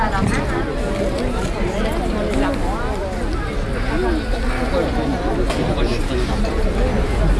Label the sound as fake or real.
real